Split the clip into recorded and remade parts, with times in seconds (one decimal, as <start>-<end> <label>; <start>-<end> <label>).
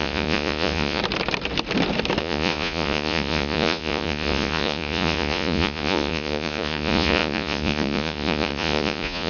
0.0-1.0 remade; 1.0-2.2 recorded; 2.2-9.3 remade